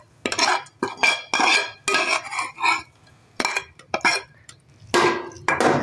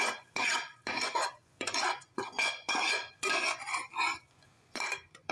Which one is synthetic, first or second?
second